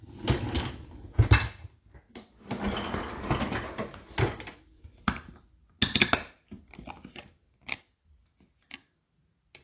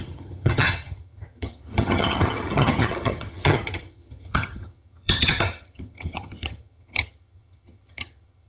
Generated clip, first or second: second